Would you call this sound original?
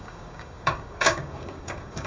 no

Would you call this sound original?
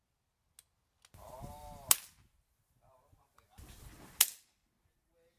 yes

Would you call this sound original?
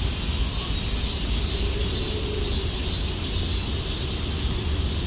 yes